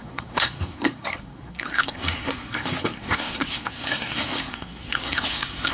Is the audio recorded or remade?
remade